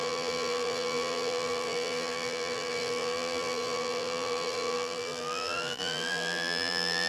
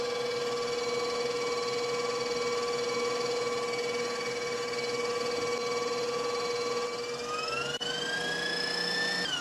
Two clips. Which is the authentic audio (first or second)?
second